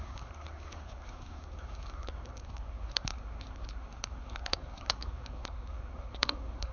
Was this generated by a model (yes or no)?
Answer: yes